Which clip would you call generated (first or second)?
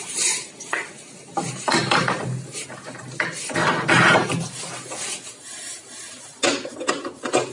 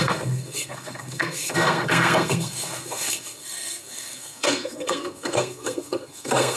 second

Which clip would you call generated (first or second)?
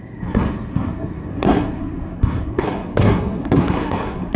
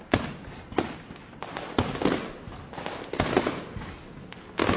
first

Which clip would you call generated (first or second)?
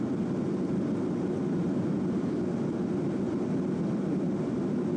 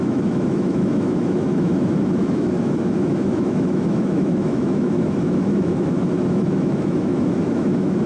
second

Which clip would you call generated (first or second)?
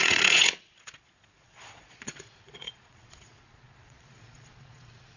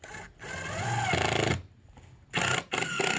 first